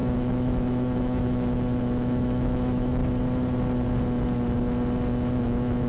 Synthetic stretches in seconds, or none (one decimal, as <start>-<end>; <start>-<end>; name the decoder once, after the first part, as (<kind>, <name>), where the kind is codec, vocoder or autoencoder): 0.0-3.0 (autoencoder, DAC-VAE); 5.4-5.9